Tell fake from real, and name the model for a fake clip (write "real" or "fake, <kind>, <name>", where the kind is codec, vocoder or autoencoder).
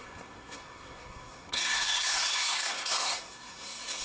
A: fake, codec, SNAC